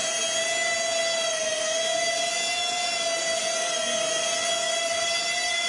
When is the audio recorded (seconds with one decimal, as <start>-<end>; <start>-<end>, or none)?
0.0-5.7